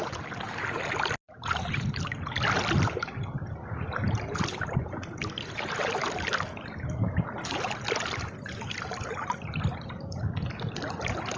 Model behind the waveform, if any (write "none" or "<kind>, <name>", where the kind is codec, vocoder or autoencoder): none